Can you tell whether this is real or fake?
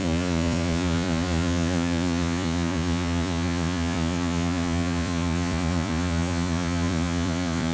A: fake